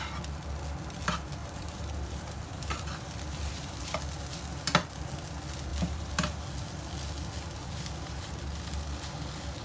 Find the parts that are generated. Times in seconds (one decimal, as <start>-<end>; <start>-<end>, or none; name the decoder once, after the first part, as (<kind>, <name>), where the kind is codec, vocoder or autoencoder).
1.4-3.8 (vocoder, BigVGAN v2); 5.7-6.4; 7.6-8.3